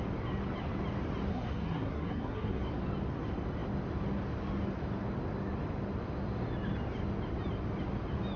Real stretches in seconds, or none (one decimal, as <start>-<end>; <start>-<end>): 0.0-1.3; 2.6-8.4